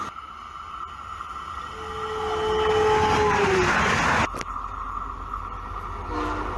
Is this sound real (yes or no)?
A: yes